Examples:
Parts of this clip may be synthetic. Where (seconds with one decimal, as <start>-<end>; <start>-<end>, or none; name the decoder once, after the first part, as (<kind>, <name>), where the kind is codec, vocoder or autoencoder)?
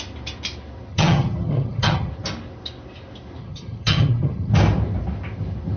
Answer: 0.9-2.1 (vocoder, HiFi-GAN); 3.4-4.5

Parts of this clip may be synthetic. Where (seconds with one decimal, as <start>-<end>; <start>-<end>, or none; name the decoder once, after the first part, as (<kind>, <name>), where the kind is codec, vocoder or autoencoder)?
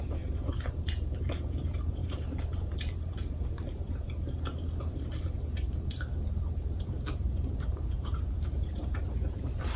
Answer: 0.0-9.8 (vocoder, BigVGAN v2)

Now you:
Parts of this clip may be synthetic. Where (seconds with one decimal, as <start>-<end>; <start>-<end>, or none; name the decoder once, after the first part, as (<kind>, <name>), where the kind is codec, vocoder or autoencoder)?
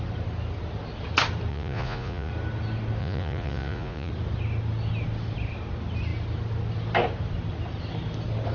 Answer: 1.5-2.3 (vocoder, Vocos); 3.0-4.1